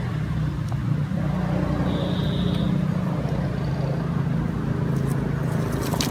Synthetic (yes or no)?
no